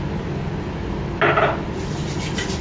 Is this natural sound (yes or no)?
yes